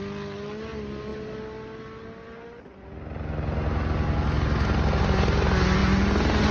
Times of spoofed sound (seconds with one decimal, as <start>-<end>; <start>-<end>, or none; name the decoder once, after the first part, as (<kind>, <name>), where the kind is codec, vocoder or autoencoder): none